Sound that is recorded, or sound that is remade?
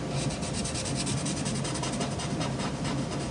recorded